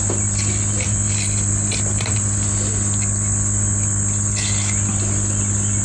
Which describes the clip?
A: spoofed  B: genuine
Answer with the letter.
B